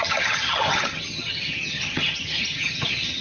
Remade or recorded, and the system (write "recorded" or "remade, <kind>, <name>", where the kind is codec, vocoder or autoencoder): remade, vocoder, HiFi-GAN